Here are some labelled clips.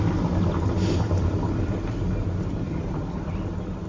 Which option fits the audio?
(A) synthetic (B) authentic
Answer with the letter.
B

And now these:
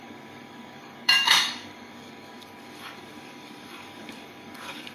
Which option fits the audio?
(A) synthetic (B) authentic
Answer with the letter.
A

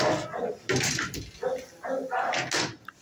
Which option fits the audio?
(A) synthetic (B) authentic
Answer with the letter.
B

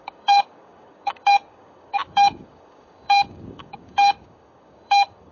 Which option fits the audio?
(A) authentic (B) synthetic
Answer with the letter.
B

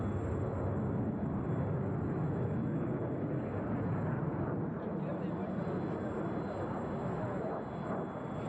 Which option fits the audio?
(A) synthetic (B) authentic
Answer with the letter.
B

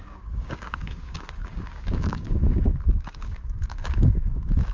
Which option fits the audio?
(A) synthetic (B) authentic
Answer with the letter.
A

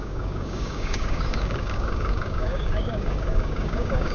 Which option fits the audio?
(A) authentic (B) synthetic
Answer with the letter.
B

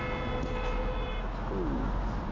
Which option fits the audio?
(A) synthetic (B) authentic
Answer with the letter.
B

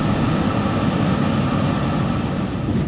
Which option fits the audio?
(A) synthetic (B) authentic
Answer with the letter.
B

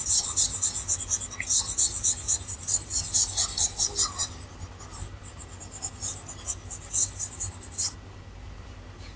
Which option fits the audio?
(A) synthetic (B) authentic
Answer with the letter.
B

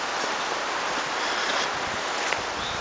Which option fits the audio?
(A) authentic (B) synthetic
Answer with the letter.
A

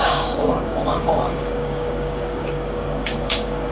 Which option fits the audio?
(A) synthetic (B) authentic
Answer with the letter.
A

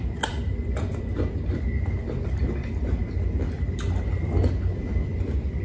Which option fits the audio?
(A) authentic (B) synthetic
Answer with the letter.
A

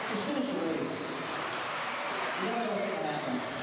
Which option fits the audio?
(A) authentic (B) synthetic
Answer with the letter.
A